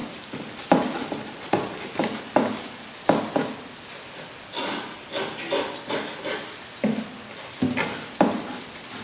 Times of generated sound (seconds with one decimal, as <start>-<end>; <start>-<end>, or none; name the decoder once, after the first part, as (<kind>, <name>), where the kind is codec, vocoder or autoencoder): 0.0-2.0 (vocoder, BigVGAN v2)